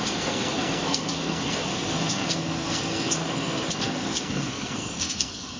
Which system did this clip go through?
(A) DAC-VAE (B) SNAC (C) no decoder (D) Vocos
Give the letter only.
B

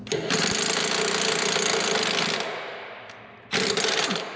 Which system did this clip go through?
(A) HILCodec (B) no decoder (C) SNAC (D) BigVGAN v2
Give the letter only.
B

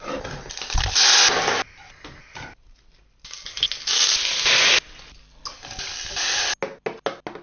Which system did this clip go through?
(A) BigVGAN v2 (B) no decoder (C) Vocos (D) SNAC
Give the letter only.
B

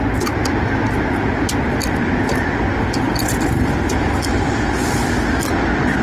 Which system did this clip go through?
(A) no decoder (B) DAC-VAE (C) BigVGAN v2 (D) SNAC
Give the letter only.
A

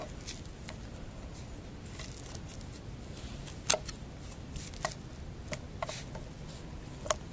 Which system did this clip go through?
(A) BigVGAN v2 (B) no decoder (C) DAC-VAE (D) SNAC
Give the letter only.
B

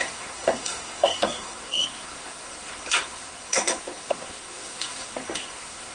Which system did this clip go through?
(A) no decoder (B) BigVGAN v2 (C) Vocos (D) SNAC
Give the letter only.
D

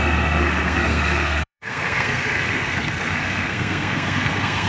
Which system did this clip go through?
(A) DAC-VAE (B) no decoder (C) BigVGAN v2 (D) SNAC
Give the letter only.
D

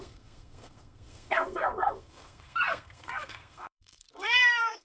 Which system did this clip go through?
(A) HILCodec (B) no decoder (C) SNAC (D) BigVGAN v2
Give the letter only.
C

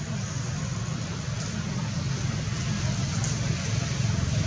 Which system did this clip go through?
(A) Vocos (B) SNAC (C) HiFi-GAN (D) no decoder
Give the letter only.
D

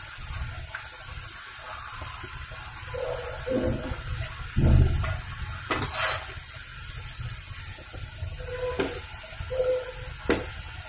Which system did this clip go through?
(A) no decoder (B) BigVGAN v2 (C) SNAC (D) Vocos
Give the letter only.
A